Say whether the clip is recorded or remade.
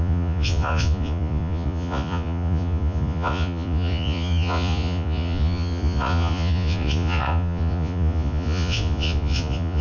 remade